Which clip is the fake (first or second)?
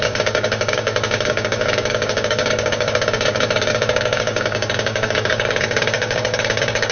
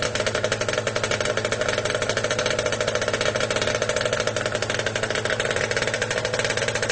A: first